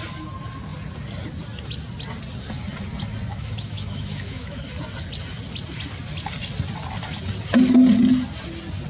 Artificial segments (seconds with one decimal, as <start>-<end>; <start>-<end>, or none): 3.3-4.6

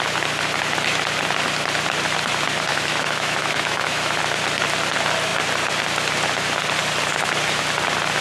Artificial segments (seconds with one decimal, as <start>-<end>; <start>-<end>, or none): 2.7-4.2

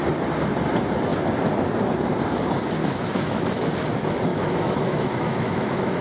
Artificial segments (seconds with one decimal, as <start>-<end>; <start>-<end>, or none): 2.8-3.7; 4.3-6.0

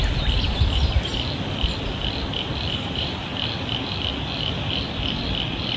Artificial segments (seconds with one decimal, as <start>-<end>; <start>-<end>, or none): 0.0-1.1; 2.7-3.3

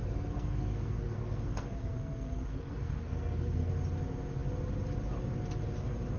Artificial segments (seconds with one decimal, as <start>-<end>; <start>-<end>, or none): 0.0-3.7

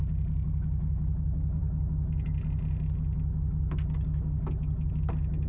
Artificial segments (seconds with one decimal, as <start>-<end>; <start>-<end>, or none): none